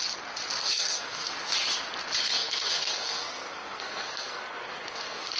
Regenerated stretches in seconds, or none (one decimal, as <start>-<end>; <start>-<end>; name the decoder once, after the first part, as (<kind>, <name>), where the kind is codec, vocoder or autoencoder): 0.6-1.3 (codec, SNAC); 2.2-5.4